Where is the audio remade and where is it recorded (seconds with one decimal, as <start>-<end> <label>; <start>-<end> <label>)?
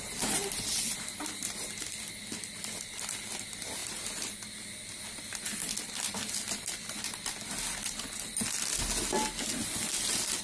0.0-10.4 recorded